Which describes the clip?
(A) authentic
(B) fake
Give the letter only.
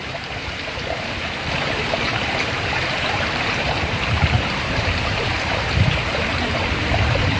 B